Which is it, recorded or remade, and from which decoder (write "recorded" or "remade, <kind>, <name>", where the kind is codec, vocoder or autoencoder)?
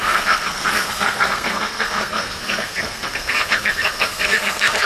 remade, codec, SNAC